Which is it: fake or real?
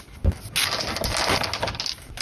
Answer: real